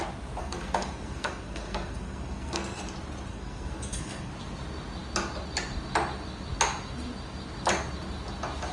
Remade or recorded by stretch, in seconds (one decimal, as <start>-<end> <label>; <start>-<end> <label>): 0.0-0.4 recorded; 0.4-2.8 remade; 2.8-3.3 recorded; 3.3-4.3 remade; 4.3-8.7 recorded

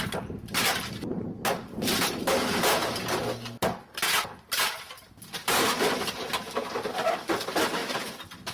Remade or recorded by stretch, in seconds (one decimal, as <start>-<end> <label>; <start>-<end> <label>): 0.0-8.5 recorded

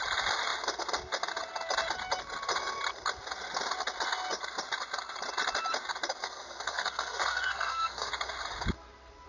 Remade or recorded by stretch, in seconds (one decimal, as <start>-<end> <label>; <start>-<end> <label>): 0.0-6.2 recorded; 6.2-8.1 remade; 8.1-9.3 recorded

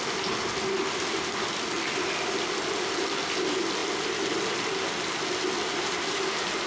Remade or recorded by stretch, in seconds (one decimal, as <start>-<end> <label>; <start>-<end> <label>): 0.0-6.7 recorded

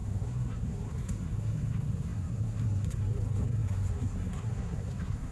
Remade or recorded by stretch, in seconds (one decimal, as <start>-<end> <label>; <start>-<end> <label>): 0.0-5.3 remade

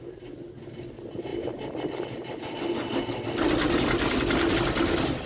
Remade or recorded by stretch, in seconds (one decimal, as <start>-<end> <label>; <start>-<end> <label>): 0.0-5.3 recorded